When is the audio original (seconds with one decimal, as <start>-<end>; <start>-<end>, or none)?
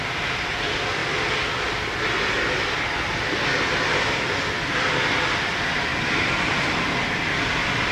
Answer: 1.0-5.4; 5.9-6.4